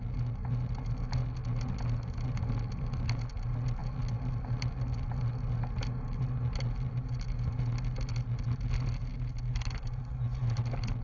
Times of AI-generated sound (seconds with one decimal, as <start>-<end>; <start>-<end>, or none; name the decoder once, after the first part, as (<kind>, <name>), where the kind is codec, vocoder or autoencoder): none